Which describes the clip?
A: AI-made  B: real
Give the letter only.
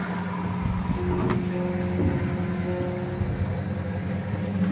B